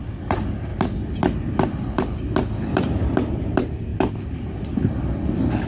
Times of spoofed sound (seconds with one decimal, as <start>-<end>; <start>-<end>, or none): none